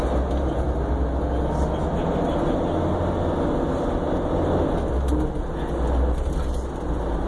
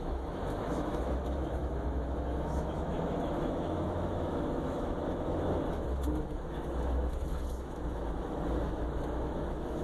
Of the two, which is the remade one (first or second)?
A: second